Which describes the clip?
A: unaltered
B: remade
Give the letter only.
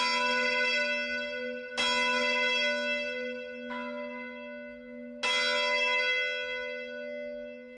A